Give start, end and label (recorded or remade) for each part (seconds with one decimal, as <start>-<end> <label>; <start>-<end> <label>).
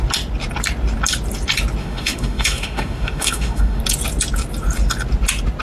0.0-1.8 recorded; 1.8-3.8 remade; 3.8-5.6 recorded